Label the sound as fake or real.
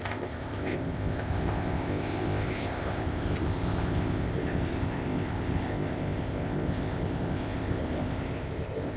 fake